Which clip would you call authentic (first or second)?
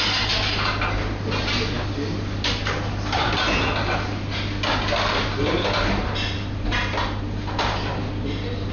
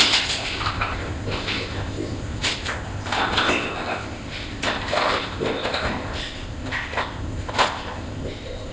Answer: first